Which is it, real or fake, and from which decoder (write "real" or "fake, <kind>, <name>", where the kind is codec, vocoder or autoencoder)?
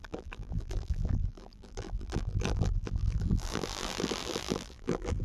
fake, vocoder, BigVGAN v2